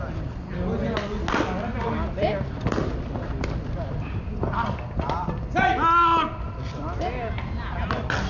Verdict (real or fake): real